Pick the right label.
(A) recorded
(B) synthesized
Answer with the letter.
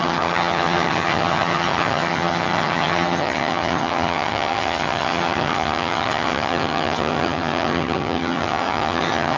B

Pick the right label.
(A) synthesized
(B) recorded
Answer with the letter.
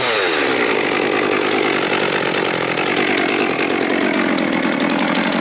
B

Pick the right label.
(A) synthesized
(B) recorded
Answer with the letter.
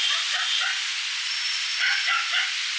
B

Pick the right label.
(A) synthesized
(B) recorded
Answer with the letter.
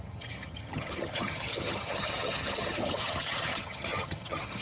A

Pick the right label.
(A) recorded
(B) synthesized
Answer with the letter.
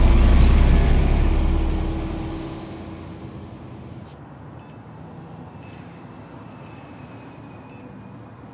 A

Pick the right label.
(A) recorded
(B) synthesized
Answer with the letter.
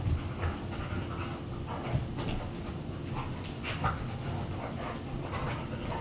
A